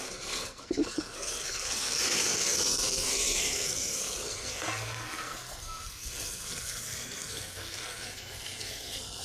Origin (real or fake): fake